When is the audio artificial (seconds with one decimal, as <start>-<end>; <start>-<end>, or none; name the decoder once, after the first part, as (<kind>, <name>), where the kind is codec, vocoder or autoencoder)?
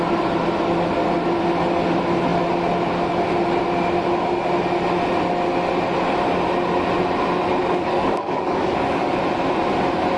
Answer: 7.6-9.2 (codec, DAC)